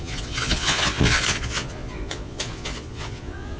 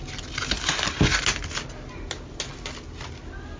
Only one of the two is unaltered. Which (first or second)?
second